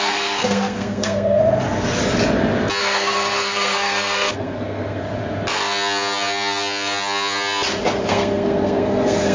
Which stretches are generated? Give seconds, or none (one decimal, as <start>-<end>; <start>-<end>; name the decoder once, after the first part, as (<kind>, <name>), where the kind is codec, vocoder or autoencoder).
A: 0.0-1.4 (codec, SNAC); 2.8-5.0; 8.0-9.3